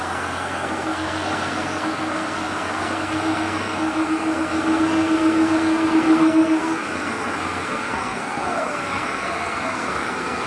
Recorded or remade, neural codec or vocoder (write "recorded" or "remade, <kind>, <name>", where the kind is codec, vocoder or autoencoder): remade, codec, SNAC